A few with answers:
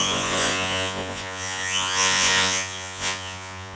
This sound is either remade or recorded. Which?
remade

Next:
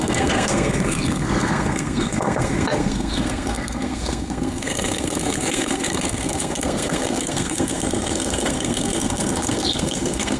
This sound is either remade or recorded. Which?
remade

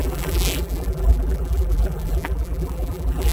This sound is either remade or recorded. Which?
remade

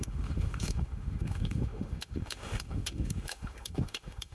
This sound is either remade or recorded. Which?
remade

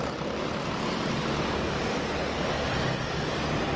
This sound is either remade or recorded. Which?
recorded